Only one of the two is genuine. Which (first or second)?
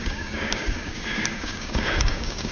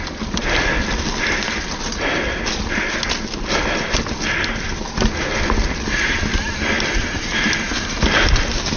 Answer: second